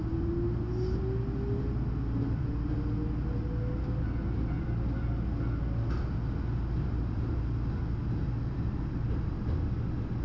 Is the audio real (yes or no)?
yes